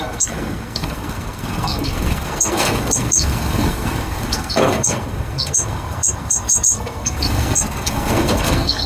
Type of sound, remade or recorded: remade